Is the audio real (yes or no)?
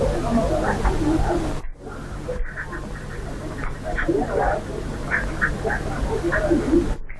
yes